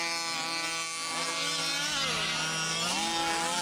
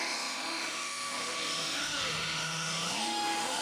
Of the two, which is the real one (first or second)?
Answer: first